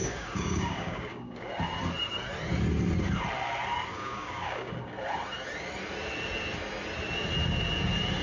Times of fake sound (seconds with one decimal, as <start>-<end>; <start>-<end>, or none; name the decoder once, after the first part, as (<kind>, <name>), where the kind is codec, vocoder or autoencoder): 0.0-1.5 (codec, DAC); 3.9-4.7